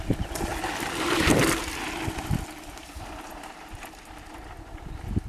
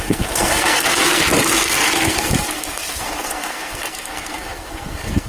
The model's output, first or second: second